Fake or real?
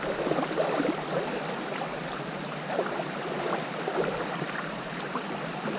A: real